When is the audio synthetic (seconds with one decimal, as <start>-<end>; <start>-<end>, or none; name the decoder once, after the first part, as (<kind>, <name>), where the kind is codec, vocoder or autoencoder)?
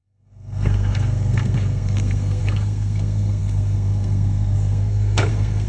0.0-5.7 (codec, SNAC)